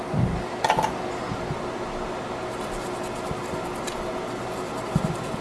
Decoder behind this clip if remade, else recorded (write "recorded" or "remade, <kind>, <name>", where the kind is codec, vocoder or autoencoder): recorded